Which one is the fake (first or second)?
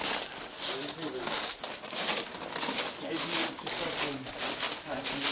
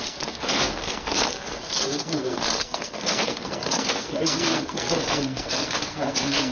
second